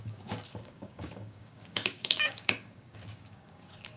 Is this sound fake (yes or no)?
yes